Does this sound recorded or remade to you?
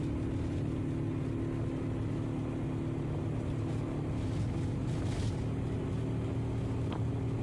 recorded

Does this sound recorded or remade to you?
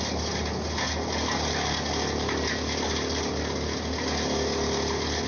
recorded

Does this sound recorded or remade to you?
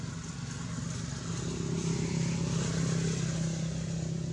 recorded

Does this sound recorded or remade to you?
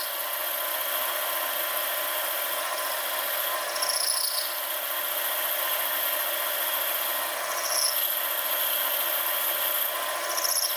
recorded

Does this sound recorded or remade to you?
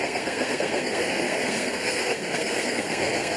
remade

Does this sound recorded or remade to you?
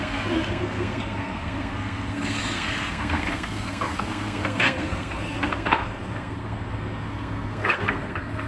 remade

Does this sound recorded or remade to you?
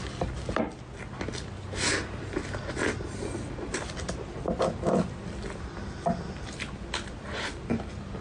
recorded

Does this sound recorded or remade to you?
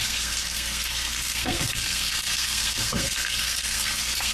remade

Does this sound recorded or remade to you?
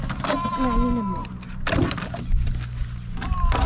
recorded